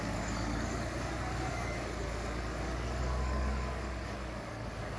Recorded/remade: remade